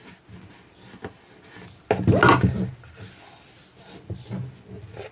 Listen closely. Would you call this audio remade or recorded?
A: recorded